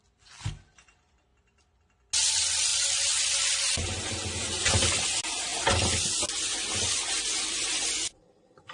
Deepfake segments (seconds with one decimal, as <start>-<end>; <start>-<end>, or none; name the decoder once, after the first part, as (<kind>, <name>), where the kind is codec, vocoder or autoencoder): none